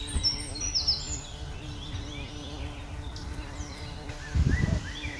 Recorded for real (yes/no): yes